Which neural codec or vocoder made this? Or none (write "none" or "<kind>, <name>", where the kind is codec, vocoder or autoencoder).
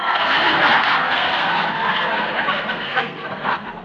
codec, SNAC